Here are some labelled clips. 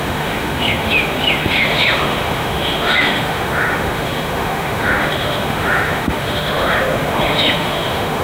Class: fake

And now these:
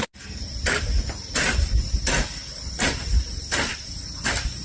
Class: real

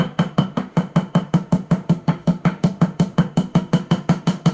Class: fake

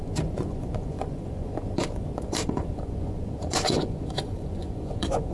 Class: fake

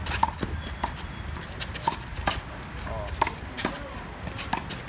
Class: real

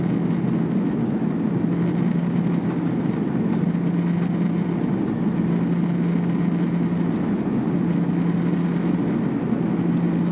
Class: real